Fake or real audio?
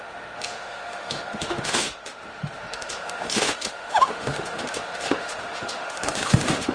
fake